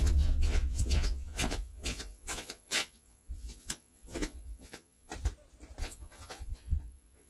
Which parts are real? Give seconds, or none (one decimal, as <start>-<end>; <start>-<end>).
5.1-5.8